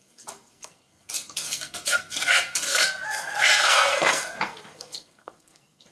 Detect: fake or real fake